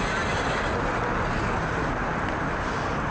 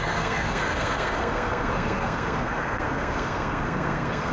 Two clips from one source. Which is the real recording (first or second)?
first